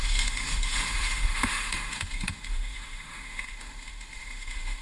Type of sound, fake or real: fake